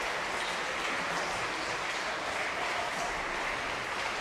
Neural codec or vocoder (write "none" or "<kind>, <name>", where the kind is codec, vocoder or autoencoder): none